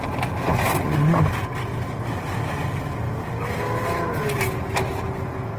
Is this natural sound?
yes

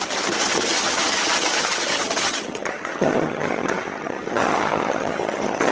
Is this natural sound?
no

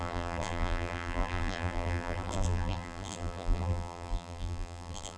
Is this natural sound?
no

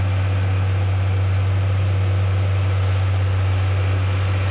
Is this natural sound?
yes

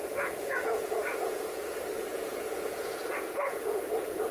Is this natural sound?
no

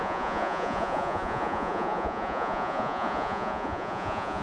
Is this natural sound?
no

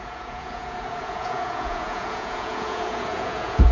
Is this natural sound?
no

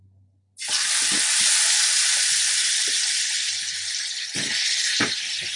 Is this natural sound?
yes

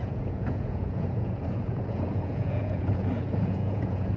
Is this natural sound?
no